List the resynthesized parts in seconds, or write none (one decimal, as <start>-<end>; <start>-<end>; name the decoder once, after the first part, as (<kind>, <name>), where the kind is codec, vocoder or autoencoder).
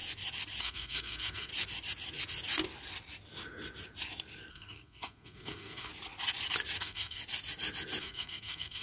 0.6-1.5 (codec, SNAC); 4.5-5.9; 6.8-7.2; 8.0-8.8